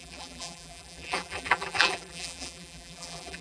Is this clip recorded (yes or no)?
no